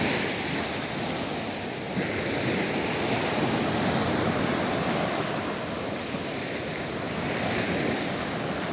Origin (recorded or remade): recorded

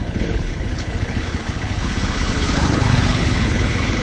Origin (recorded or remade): remade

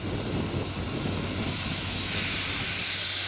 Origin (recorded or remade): recorded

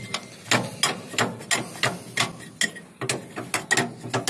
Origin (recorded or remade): recorded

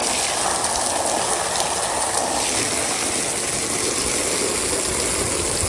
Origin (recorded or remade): recorded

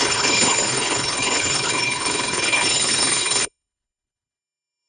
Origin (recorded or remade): remade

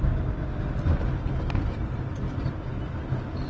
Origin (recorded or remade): recorded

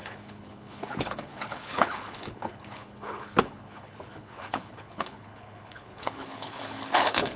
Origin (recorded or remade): remade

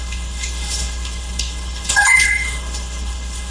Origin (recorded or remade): remade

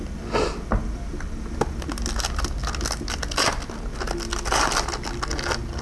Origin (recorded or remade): recorded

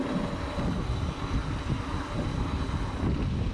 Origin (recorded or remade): recorded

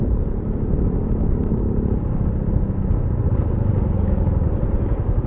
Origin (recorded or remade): recorded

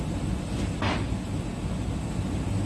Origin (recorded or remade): recorded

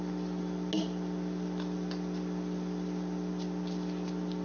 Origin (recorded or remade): recorded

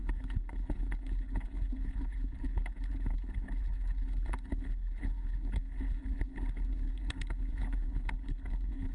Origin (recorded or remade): remade